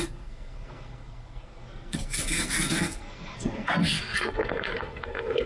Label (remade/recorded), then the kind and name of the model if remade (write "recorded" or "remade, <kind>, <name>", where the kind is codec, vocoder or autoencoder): remade, codec, SNAC